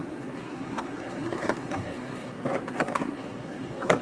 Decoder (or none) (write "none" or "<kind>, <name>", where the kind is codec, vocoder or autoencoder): codec, SNAC